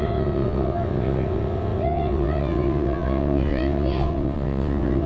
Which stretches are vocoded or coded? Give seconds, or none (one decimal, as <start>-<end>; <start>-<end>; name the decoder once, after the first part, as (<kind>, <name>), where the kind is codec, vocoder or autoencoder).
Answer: 0.0-5.1 (vocoder, WaveNeXt)